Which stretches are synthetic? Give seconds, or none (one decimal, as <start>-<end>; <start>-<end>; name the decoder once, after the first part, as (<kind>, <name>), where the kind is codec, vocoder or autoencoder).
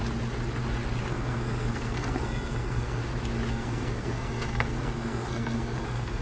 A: 1.1-3.0 (codec, SNAC); 3.5-6.2